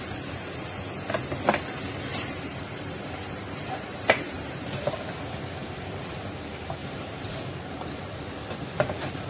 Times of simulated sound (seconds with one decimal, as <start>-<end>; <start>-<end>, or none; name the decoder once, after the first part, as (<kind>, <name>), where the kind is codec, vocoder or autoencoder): 2.1-4.9 (vocoder, BigVGAN v2); 5.6-6.1; 6.8-7.4